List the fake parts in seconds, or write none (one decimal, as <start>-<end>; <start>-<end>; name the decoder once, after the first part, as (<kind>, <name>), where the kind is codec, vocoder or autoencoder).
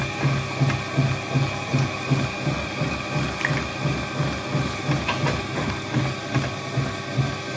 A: none